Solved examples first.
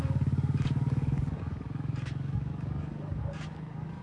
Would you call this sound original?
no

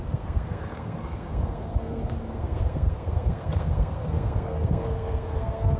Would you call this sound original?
no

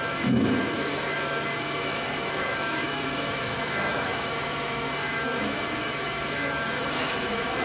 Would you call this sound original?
no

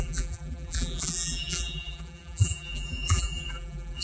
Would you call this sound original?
no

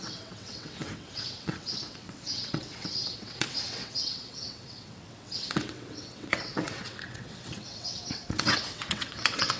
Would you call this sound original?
no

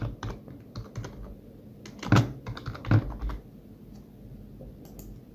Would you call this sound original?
yes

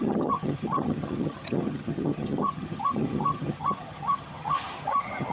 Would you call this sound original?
no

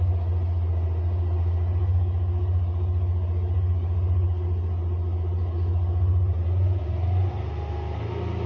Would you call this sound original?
yes